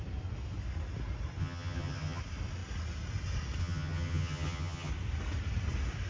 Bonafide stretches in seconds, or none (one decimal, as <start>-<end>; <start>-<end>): 0.0-1.4; 2.2-3.6; 4.9-6.1